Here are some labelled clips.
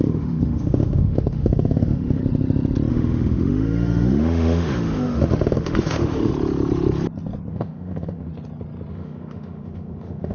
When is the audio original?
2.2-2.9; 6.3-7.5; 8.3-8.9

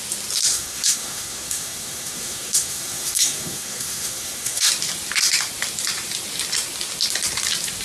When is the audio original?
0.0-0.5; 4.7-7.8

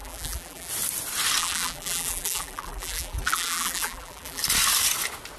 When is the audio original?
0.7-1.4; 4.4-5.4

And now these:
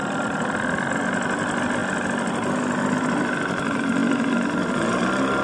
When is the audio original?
0.0-5.4

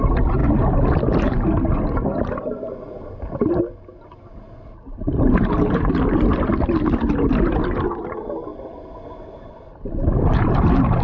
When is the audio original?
0.0-11.0

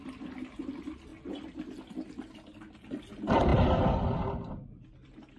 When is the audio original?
0.0-5.4

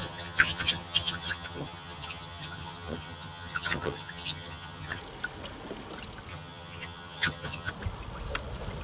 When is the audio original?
5.0-6.3; 7.7-8.8

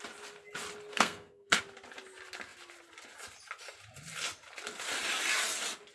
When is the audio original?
0.0-0.9; 1.6-5.9